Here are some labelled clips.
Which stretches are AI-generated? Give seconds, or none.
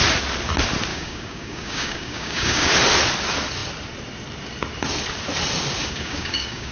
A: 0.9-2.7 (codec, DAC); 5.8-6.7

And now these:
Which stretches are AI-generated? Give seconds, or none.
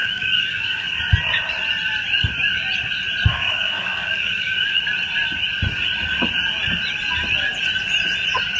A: 0.0-1.0 (codec, DAC); 3.3-4.8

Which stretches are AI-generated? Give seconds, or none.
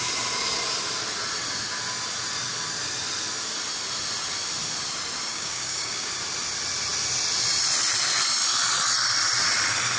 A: 5.3-6.1 (codec, DAC)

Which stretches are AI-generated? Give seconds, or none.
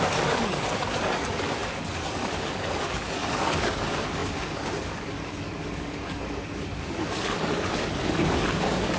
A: 0.0-9.0 (codec, DAC)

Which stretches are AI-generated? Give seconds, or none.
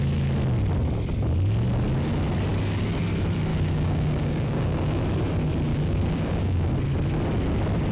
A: 3.5-5.0 (codec, DAC); 5.7-6.7